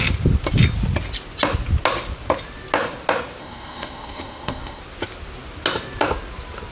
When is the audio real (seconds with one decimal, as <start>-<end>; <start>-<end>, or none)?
0.0-3.4; 4.8-6.7